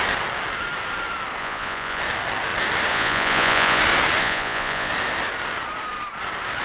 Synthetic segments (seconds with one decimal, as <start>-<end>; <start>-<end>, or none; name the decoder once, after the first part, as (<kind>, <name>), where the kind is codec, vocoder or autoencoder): 1.4-2.0 (vocoder, Vocos); 2.9-3.8; 4.2-4.9